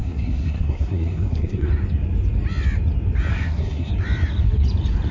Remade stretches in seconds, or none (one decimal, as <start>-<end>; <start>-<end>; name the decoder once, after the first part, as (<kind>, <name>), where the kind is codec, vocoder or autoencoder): 0.0-1.7 (codec, SNAC); 3.3-3.9